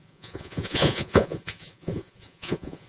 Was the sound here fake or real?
fake